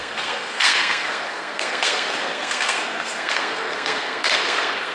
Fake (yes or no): yes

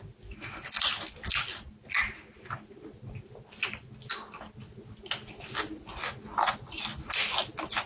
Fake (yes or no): no